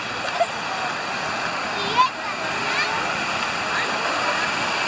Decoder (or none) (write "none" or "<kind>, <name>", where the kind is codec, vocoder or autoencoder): none